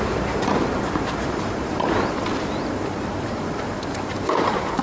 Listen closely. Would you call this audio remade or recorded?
remade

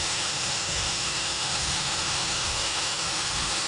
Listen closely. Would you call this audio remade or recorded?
remade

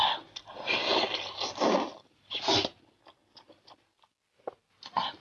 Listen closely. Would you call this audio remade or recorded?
recorded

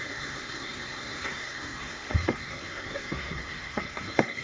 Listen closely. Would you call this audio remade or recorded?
remade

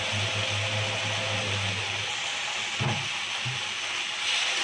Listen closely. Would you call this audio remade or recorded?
recorded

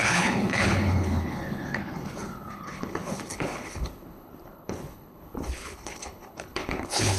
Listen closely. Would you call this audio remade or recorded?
remade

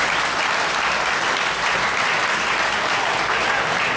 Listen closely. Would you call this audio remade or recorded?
recorded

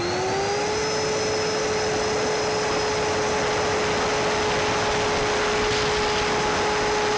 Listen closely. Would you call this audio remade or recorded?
recorded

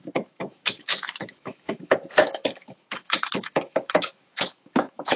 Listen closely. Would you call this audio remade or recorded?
remade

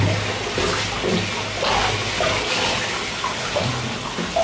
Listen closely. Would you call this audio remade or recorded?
recorded